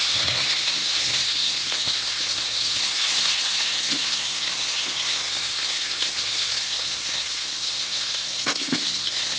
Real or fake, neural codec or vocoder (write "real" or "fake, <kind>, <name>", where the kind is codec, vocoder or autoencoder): fake, codec, SNAC